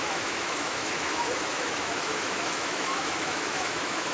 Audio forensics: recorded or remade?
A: remade